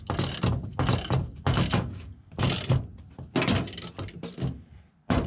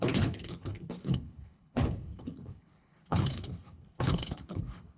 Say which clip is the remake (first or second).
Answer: second